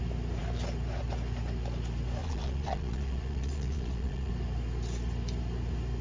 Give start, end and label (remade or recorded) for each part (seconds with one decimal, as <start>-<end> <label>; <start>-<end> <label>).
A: 0.0-2.2 recorded; 2.2-4.3 remade; 4.3-6.0 recorded